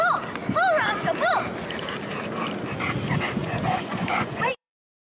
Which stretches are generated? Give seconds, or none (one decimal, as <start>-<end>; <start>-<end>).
3.4-5.1